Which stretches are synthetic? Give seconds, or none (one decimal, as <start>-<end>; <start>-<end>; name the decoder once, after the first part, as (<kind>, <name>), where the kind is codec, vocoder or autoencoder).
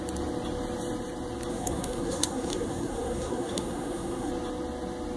1.5-4.3 (codec, SNAC)